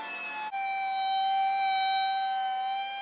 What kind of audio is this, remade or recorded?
recorded